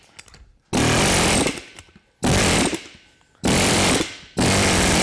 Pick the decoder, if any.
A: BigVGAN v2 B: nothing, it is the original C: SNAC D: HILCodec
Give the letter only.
B